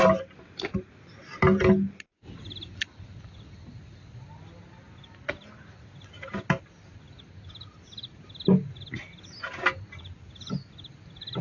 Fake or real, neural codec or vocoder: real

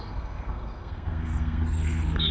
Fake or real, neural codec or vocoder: fake, codec, SNAC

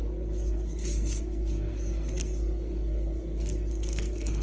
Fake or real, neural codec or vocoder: fake, codec, SNAC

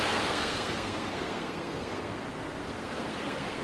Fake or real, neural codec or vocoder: fake, codec, SNAC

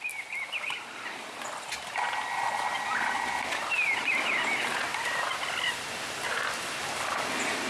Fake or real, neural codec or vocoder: real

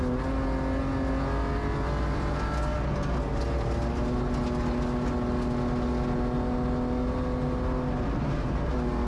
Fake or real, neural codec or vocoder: real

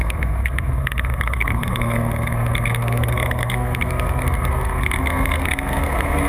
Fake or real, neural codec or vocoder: fake, codec, SNAC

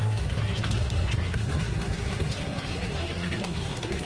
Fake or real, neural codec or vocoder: fake, codec, SNAC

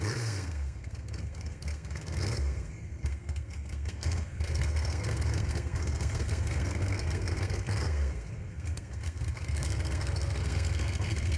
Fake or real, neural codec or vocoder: fake, codec, SNAC